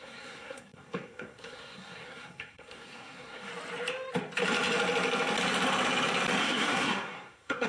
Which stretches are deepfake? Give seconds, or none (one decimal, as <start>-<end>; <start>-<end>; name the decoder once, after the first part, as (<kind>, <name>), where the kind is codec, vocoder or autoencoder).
0.0-3.5 (codec, SNAC); 6.4-7.7